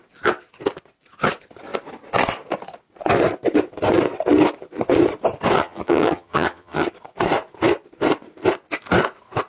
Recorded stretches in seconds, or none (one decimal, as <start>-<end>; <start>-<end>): 0.0-5.6; 6.9-9.5